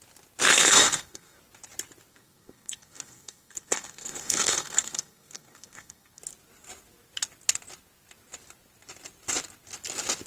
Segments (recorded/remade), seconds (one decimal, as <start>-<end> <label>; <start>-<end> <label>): 0.0-0.5 recorded; 0.5-1.4 remade; 1.4-2.1 recorded; 2.1-6.2 remade; 6.2-10.3 recorded